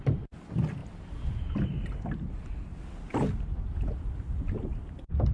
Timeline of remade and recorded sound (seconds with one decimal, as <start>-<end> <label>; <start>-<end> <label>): 0.0-0.8 recorded; 0.8-4.0 remade; 4.0-5.3 recorded